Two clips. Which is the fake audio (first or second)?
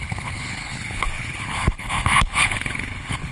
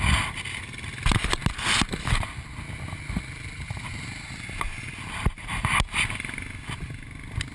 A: first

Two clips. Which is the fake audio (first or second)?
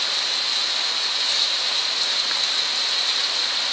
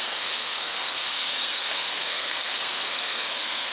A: second